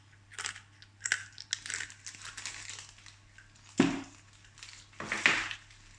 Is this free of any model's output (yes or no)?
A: yes